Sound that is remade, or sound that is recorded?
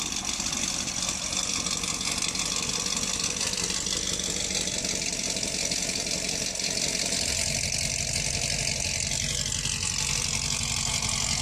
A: recorded